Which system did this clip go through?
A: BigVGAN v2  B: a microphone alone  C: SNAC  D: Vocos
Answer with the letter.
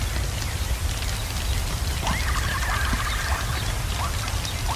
B